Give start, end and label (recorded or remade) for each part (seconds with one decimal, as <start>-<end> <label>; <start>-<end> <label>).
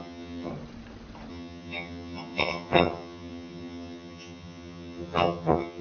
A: 0.0-0.5 remade; 0.5-1.3 recorded; 1.3-5.8 remade